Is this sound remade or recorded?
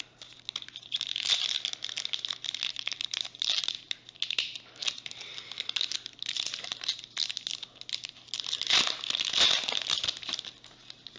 recorded